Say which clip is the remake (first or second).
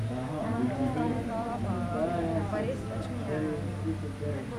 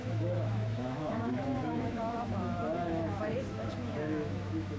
second